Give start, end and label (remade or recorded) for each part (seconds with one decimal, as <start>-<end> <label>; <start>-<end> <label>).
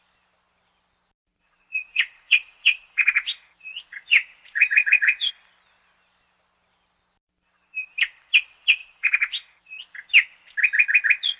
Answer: 0.0-1.2 recorded; 1.2-5.3 remade; 5.3-8.8 recorded; 8.8-9.8 remade; 9.8-11.4 recorded